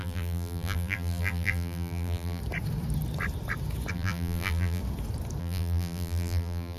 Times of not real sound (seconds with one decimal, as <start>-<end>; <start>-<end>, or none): 0.0-2.4; 3.9-4.8; 5.4-6.8